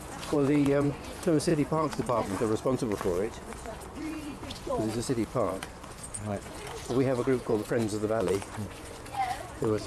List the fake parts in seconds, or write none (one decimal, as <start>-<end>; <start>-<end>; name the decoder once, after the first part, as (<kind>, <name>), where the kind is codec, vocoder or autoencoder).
0.0-9.9 (vocoder, Vocos)